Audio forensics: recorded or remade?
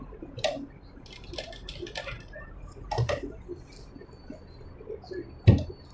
recorded